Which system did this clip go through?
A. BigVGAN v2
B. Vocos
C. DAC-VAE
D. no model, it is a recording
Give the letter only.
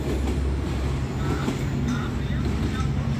D